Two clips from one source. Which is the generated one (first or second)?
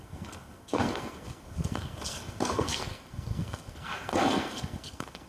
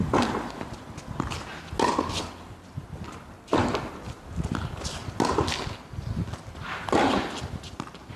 first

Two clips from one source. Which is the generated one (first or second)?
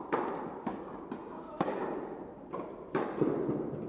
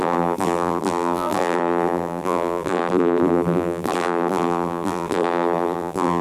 second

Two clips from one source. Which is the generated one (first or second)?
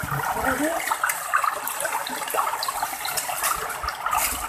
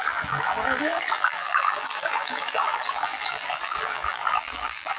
second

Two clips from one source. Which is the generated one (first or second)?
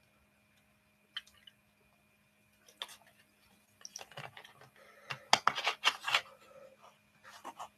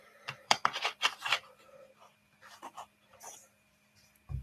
second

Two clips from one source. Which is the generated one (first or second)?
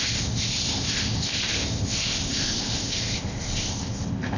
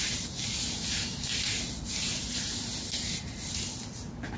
first